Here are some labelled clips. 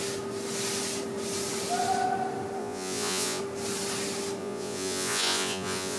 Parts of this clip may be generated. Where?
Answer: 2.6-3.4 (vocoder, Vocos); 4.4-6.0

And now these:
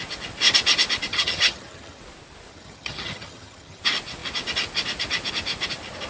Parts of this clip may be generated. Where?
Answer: 1.1-2.0 (vocoder, HiFi-GAN); 2.5-3.8